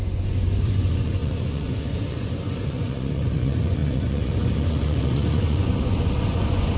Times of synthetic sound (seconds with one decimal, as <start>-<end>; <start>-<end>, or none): 0.0-6.8